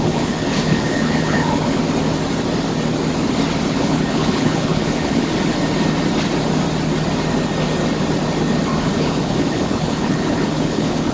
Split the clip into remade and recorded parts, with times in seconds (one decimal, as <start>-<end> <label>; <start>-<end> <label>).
0.0-1.8 remade; 1.8-3.7 recorded; 3.7-5.3 remade; 5.3-8.8 recorded; 8.8-11.1 remade